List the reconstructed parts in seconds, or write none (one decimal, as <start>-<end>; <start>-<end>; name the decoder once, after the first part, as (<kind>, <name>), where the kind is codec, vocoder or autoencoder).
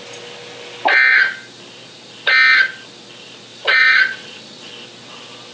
3.5-4.7 (vocoder, Vocos)